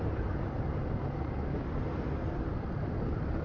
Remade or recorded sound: remade